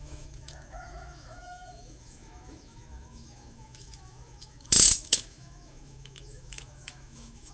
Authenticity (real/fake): fake